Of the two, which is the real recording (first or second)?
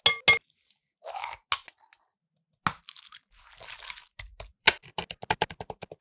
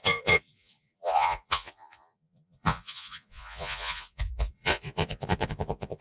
first